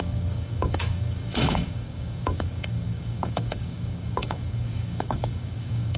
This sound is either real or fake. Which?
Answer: fake